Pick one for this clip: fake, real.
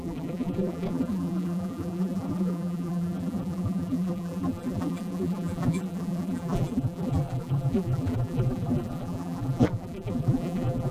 fake